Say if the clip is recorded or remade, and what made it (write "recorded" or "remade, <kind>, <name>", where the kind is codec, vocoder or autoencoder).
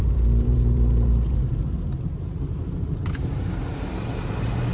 remade, vocoder, BigVGAN v2